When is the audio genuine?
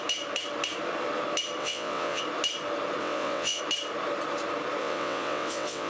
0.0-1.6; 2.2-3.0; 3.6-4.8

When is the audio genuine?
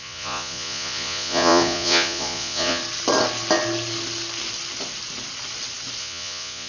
2.8-6.0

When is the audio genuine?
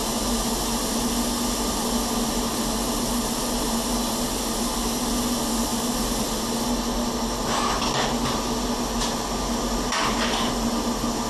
0.0-11.3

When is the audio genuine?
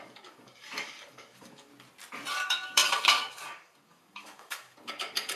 1.7-2.3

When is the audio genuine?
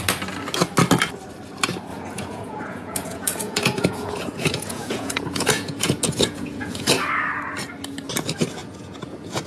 0.0-1.9; 6.9-8.6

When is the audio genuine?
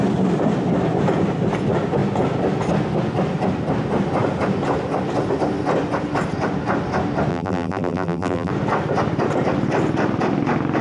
0.0-7.3; 8.5-10.8